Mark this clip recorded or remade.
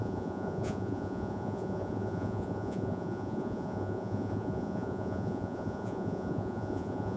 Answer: remade